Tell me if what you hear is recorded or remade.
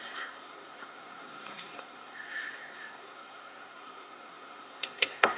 remade